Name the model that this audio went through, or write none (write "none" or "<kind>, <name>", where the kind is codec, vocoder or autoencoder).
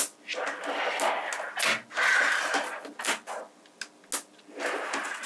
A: none